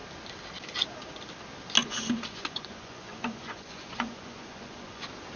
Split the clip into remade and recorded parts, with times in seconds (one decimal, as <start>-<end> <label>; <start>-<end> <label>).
0.0-1.8 recorded; 1.8-5.0 remade; 5.0-5.4 recorded